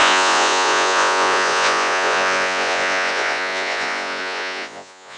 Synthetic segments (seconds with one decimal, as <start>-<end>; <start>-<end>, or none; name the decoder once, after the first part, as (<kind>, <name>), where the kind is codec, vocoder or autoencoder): 0.0-5.2 (vocoder, Vocos)

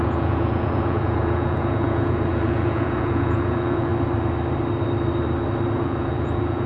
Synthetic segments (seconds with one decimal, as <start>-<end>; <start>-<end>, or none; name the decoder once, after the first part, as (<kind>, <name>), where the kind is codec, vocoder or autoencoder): 0.0-3.9 (vocoder, Vocos); 5.7-6.7

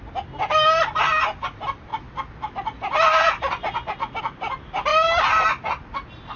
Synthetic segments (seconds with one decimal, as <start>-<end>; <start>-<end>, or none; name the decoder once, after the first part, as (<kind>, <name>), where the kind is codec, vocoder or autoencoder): none

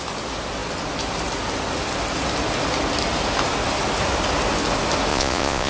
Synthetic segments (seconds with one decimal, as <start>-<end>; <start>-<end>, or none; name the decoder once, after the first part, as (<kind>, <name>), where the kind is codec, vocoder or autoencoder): 5.1-5.7 (vocoder, Vocos)